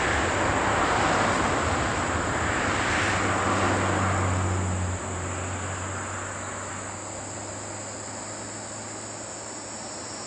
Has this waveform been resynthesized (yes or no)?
no